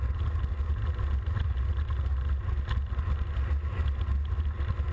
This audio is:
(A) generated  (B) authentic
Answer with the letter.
B